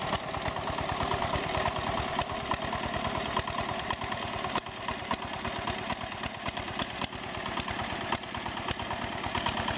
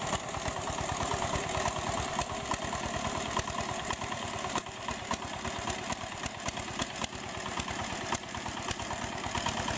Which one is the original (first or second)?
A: first